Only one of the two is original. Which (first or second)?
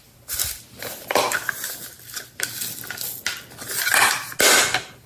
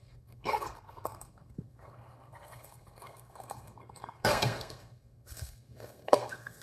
first